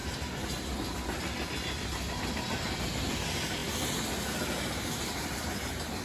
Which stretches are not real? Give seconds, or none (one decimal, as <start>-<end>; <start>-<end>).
none